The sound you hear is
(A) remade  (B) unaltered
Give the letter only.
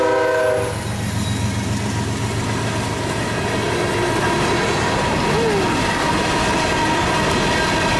B